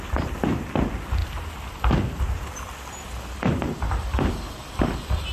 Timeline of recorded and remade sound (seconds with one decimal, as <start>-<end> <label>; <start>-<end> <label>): 0.0-5.3 recorded